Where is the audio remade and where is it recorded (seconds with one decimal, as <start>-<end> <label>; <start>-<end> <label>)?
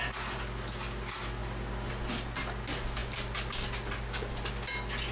0.0-5.1 recorded